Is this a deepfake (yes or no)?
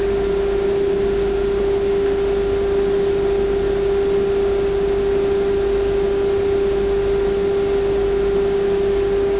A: no